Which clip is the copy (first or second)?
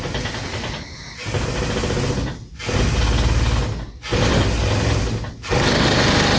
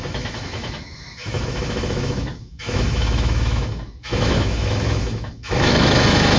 second